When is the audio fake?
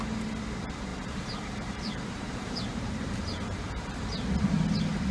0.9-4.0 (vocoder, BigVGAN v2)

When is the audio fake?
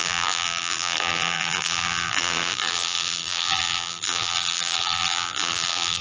0.0-6.0 (vocoder, BigVGAN v2)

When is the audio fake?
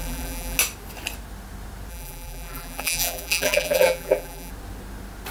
0.0-0.6 (vocoder, BigVGAN v2); 1.9-4.5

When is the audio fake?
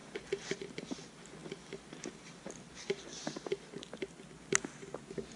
none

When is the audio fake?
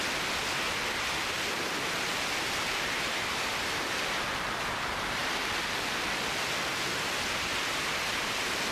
2.7-5.4 (vocoder, BigVGAN v2)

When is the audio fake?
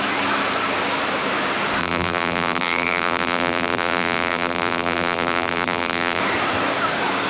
1.8-6.2 (vocoder, BigVGAN v2)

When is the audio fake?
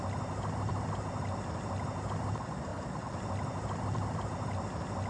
2.7-5.1 (vocoder, BigVGAN v2)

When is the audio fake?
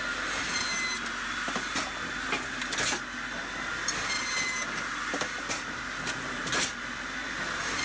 none